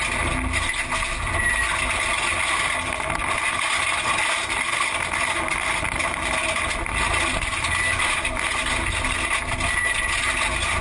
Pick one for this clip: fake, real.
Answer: real